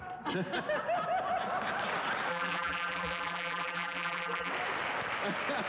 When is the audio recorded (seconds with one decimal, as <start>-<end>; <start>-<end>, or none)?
0.0-2.3; 4.5-5.7